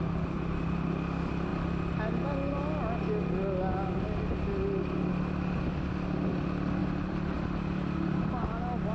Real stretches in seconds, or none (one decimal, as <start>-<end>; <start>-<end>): 0.0-6.8; 8.3-8.9